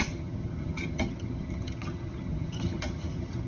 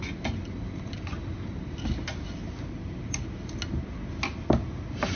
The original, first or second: second